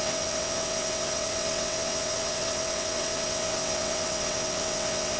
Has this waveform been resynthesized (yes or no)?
yes